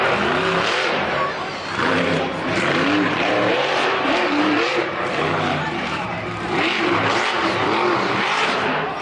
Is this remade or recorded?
remade